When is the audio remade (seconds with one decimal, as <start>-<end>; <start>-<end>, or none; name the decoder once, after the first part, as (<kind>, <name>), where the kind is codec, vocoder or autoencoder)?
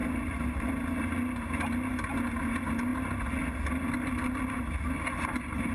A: 0.0-0.7 (vocoder, BigVGAN v2)